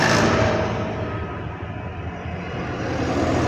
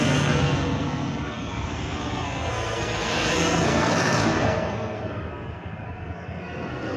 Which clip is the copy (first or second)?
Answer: second